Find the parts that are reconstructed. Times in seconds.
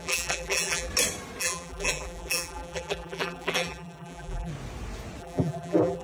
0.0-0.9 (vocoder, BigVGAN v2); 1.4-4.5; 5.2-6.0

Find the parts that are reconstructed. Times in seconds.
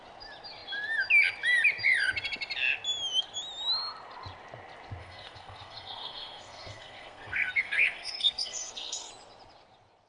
5.0-9.1 (codec, SNAC)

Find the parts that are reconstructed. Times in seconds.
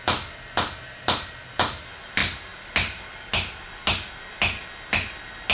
none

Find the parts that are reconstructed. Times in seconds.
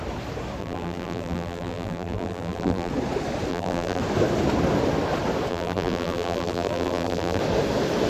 0.6-2.9 (vocoder, BigVGAN v2); 3.5-4.0; 5.5-7.4